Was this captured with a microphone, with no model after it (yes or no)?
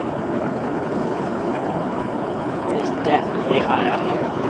no